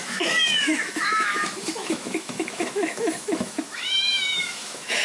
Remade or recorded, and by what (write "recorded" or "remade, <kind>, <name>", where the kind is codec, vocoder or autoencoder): remade, autoencoder, DAC-VAE